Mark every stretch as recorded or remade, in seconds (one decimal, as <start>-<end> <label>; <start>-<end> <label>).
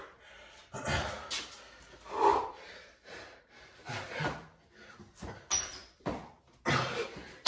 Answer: 0.0-2.3 recorded; 2.3-3.9 remade; 3.9-7.5 recorded